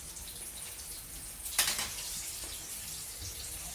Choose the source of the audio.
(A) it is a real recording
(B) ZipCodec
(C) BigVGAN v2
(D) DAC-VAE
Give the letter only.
A